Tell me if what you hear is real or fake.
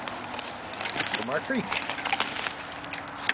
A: real